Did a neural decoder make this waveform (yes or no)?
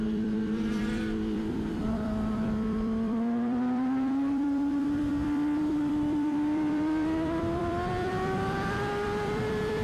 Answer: yes